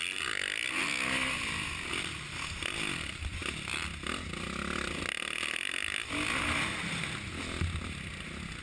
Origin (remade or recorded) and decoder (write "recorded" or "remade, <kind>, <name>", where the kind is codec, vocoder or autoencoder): recorded